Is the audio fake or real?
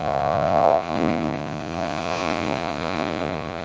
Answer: fake